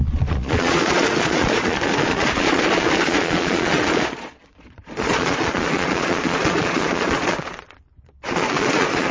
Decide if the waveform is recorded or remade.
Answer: remade